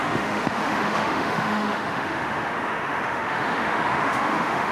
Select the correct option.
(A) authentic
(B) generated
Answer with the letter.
B